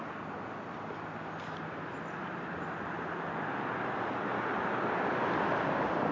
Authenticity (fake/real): real